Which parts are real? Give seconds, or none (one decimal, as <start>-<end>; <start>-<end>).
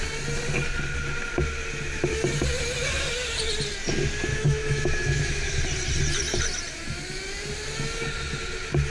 0.0-4.3; 5.6-8.9